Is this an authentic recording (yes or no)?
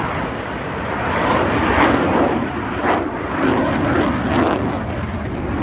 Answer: yes